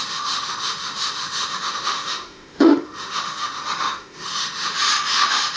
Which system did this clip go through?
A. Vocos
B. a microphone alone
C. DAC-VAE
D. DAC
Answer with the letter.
C